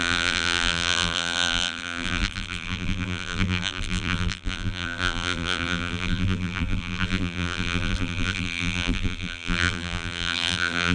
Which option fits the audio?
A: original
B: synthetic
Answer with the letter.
B